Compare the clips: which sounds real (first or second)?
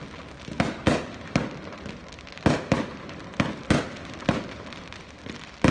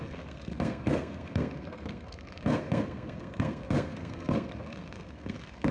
first